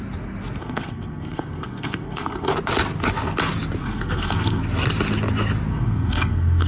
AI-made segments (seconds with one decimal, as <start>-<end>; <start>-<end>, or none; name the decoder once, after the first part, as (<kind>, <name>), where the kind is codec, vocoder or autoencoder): 0.6-2.5 (codec, SNAC); 3.8-4.6; 5.7-6.7